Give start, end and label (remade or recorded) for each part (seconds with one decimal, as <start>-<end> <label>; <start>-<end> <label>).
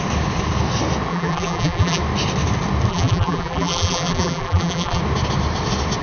0.0-1.1 recorded; 1.1-2.0 remade; 2.0-2.9 recorded; 2.9-5.0 remade; 5.0-6.0 recorded